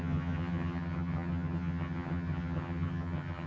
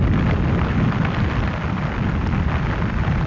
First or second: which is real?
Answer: second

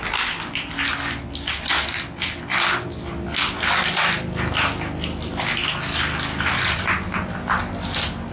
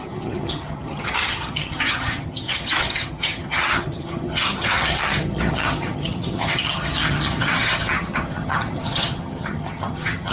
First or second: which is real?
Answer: first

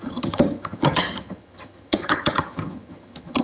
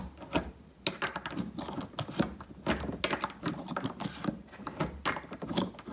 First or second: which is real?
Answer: second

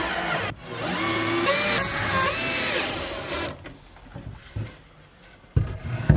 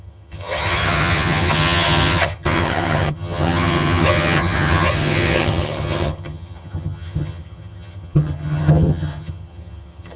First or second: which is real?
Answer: first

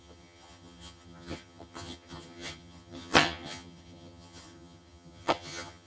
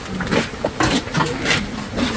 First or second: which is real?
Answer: second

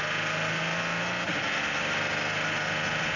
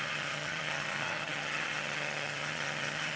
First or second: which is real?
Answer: first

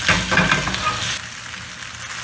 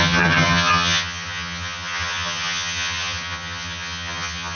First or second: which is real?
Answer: first